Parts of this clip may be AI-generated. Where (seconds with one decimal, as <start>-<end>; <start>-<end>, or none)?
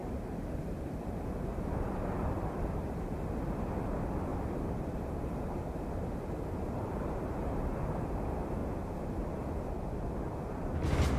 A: 0.0-3.7; 4.3-8.0